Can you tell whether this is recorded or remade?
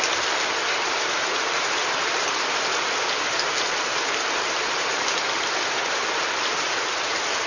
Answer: recorded